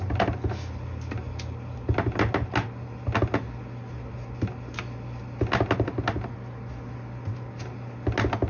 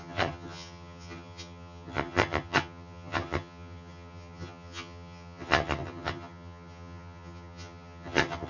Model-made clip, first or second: second